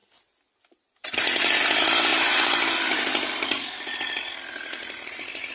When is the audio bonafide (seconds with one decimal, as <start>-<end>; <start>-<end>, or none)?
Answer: 0.0-1.1